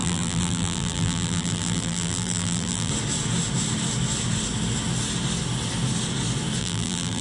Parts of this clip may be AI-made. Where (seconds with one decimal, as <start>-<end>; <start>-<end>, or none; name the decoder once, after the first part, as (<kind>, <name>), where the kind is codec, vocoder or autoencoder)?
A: 0.0-2.9 (vocoder, BigVGAN v2); 6.6-7.2